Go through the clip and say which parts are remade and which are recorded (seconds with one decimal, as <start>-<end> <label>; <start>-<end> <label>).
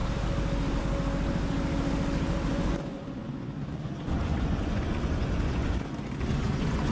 0.0-2.5 recorded; 2.5-6.9 remade